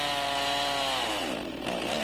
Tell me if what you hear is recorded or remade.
recorded